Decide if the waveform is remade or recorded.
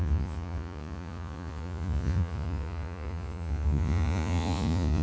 remade